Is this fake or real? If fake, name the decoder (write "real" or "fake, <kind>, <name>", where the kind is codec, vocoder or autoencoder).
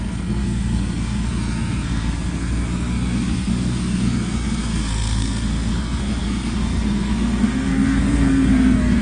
fake, codec, SNAC